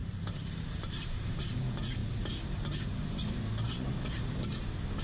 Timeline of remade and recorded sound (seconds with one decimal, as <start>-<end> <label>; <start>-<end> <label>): 0.0-1.6 remade; 1.6-5.0 recorded